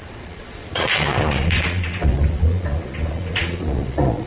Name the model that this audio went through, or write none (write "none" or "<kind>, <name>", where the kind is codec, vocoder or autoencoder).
vocoder, Vocos